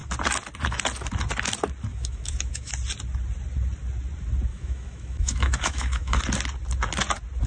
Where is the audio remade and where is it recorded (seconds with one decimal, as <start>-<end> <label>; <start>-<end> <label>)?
0.0-1.9 recorded; 1.9-2.7 remade; 2.7-4.5 recorded; 4.5-6.2 remade; 6.2-7.5 recorded